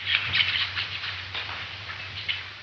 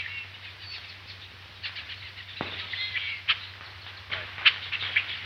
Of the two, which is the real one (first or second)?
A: second